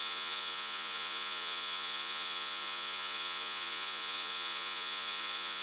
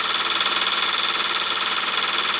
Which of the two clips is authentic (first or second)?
second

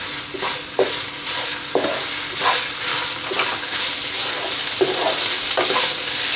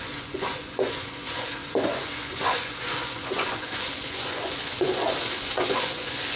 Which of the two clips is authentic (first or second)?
first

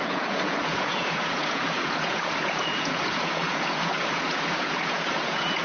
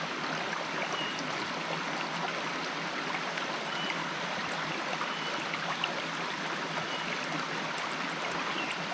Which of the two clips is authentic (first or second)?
second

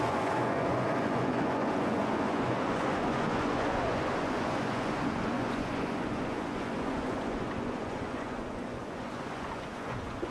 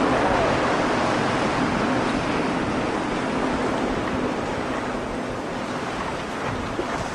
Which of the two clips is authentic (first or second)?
second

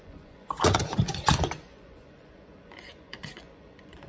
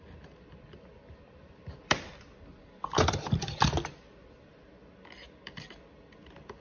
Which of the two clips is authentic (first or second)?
second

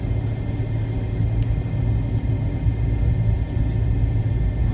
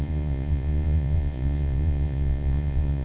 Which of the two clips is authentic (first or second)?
first